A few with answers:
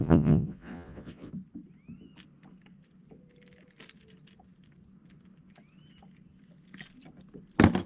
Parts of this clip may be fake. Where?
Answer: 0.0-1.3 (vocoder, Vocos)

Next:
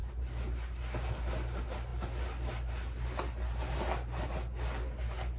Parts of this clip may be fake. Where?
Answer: none

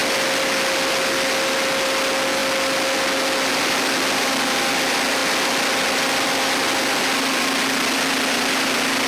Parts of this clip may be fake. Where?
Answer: none

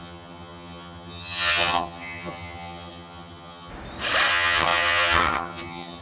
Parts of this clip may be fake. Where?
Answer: 0.0-3.7 (vocoder, HiFi-GAN); 4.3-6.0

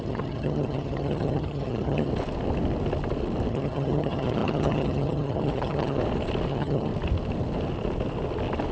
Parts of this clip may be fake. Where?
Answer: 0.0-2.1 (vocoder, HiFi-GAN); 3.5-6.0; 6.5-6.9

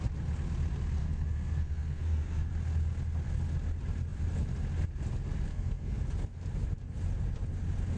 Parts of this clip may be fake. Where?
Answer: 1.0-2.5 (codec, SNAC); 5.5-6.0

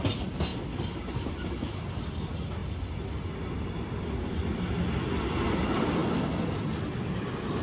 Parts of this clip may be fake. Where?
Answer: none

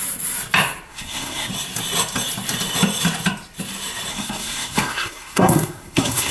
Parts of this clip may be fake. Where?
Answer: 0.9-1.5 (codec, SNAC); 4.1-6.3